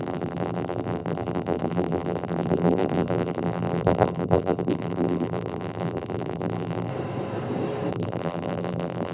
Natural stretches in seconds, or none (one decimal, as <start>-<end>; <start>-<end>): 6.9-7.9